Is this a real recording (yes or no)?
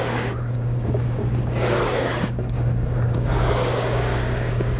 no